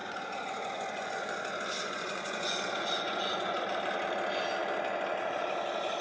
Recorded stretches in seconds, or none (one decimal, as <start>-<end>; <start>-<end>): 3.6-6.0